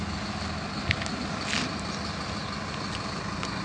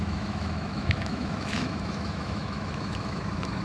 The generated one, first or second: second